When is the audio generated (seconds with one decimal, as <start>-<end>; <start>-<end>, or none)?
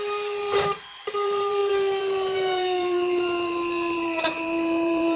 0.0-5.2